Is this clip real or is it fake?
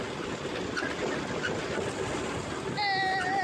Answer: real